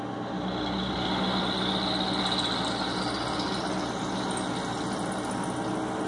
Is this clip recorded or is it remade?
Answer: recorded